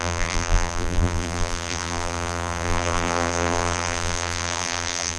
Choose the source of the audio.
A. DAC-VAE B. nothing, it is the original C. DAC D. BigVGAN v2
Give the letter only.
D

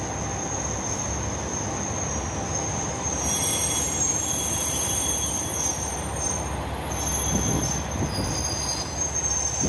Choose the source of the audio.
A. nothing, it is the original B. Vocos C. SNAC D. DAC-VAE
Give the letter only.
A